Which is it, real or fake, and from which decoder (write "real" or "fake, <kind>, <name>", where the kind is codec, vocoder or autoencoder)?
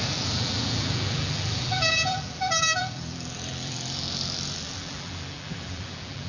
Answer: fake, vocoder, BigVGAN v2